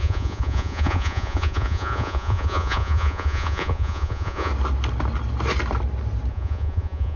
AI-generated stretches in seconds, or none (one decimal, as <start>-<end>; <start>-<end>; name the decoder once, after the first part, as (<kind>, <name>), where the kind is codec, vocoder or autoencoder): 0.0-4.5 (vocoder, Vocos); 6.3-7.2